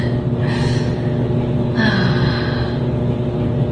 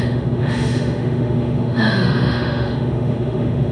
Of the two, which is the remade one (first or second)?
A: second